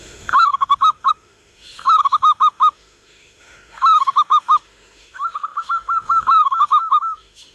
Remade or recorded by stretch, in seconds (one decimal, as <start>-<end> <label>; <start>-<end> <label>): 0.0-7.5 remade